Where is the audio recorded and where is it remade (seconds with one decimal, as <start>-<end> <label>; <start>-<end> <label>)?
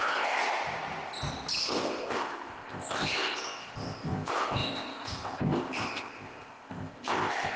0.0-0.4 remade; 0.4-1.6 recorded; 1.6-7.6 remade